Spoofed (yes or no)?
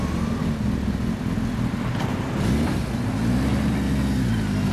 no